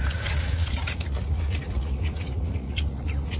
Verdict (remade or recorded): remade